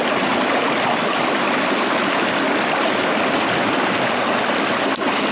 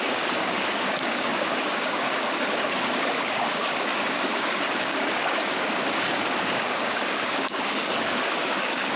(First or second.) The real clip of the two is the first